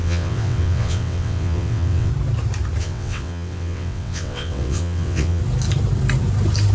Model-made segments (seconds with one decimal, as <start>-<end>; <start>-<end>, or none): 0.0-2.1; 2.8-5.4

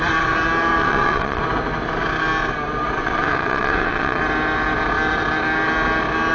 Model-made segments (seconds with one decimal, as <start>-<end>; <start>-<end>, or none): 0.8-1.4; 3.0-4.2

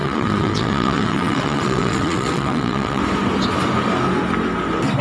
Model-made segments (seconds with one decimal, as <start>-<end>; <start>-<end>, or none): 0.0-3.0